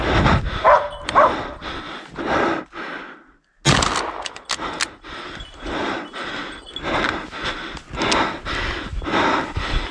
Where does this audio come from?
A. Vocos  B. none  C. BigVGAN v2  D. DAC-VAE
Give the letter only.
B